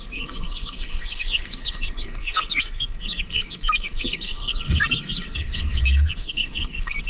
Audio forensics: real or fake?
fake